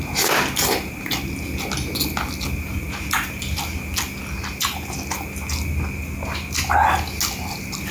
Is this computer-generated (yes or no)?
no